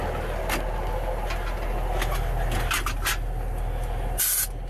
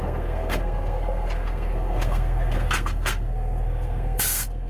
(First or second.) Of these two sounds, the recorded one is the first